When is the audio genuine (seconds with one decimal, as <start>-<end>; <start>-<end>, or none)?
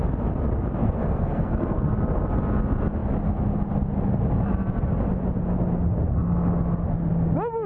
0.0-0.8; 1.9-7.7